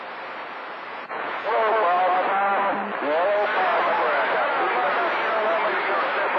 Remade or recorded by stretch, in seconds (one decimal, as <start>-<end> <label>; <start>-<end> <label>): 0.0-0.9 recorded; 0.9-1.5 remade; 1.5-6.4 recorded